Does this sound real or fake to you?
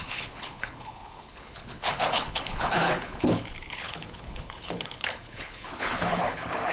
fake